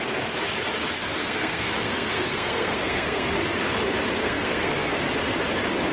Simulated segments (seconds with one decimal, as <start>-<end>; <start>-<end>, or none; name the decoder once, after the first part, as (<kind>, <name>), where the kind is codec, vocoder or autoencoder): 1.2-3.3 (codec, SNAC); 4.2-4.9